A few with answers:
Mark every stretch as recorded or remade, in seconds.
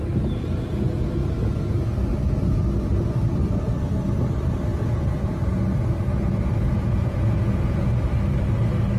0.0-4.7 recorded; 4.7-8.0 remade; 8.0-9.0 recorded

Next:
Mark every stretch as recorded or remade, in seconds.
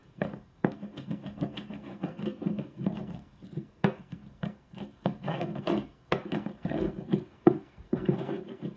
0.0-8.8 remade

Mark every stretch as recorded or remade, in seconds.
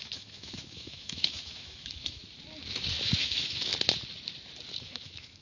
0.0-2.2 remade; 2.2-3.0 recorded; 3.0-3.7 remade; 3.7-4.8 recorded; 4.8-5.4 remade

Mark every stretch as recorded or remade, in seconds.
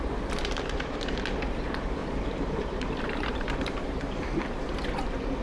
0.0-2.0 recorded; 2.0-4.6 remade; 4.6-5.4 recorded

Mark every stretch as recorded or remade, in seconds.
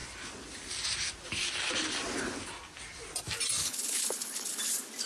0.0-3.6 recorded; 3.6-4.6 remade; 4.6-5.1 recorded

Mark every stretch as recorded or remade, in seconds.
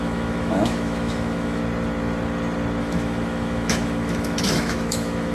0.0-1.6 remade; 1.6-2.8 recorded; 2.8-5.3 remade